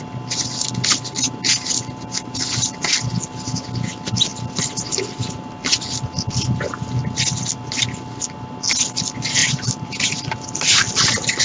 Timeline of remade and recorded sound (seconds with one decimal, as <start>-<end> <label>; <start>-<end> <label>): 0.0-9.4 recorded; 9.4-10.2 remade; 10.2-11.4 recorded

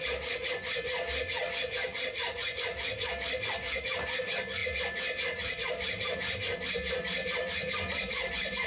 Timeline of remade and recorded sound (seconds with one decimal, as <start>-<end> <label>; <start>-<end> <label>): 0.0-1.9 recorded; 1.9-2.5 remade; 2.5-4.6 recorded; 4.6-8.7 remade

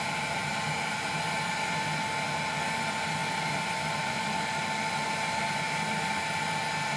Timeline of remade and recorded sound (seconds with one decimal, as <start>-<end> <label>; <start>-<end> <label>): 0.0-7.0 recorded

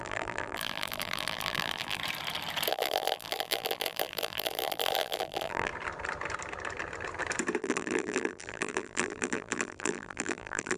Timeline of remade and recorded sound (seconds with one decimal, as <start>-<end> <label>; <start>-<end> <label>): 0.0-2.0 remade; 2.0-2.7 recorded; 2.7-5.7 remade; 5.7-7.6 recorded; 7.6-10.8 remade

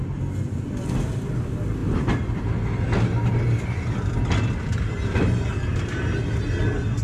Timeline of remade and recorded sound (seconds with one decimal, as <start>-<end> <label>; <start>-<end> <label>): 0.0-1.8 recorded; 1.8-2.4 remade; 2.4-7.0 recorded

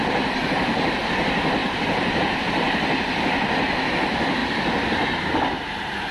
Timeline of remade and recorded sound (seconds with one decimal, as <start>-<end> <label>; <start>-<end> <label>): 0.0-0.4 recorded; 0.4-0.9 remade; 0.9-1.6 recorded; 1.6-2.2 remade; 2.2-6.1 recorded

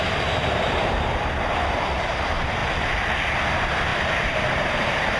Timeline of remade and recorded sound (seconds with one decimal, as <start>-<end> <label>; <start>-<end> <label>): 0.0-2.6 remade; 2.6-3.5 recorded; 3.5-5.2 remade